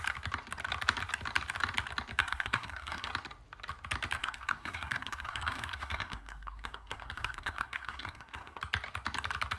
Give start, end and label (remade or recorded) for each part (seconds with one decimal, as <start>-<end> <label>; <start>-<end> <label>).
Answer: 0.0-2.2 recorded; 2.2-3.1 remade; 3.1-4.2 recorded; 4.2-8.6 remade; 8.6-9.6 recorded